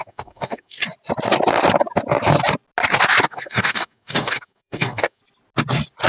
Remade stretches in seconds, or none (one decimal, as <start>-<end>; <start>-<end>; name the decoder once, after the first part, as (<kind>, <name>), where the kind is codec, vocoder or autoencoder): 0.0-0.8 (codec, DAC); 3.3-5.2